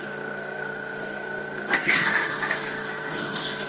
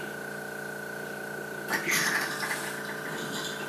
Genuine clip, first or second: second